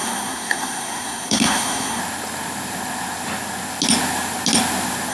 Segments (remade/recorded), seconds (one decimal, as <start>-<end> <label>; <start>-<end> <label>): 0.0-2.0 remade; 2.0-5.1 recorded